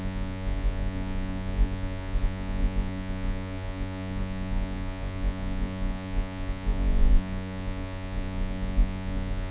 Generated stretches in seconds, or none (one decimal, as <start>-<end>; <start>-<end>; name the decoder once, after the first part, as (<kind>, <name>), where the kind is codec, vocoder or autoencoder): 0.0-9.5 (vocoder, Vocos)